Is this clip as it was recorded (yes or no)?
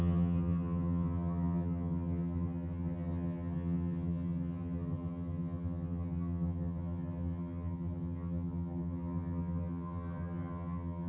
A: no